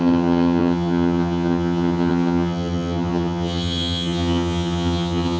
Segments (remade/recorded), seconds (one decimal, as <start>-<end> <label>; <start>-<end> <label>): 0.0-5.4 remade